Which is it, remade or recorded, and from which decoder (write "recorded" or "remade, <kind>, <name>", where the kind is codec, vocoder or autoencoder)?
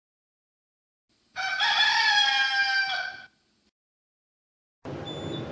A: recorded